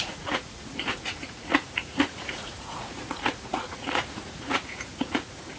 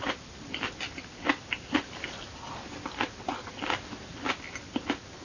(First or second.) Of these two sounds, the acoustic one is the second